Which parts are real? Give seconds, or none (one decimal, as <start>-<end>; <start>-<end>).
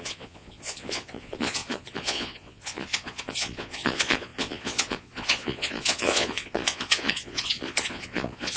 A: none